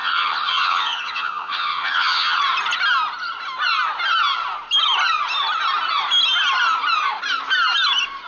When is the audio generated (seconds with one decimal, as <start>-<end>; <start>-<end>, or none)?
0.0-2.4